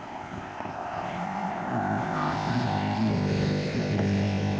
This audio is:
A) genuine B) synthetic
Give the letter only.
B